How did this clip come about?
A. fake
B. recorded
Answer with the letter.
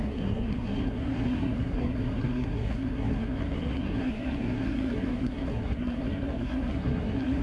A